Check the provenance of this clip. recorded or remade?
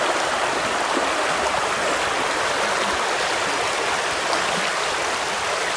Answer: recorded